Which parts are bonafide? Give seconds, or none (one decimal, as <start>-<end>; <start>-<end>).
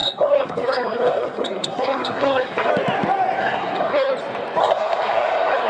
2.7-3.4; 4.1-4.6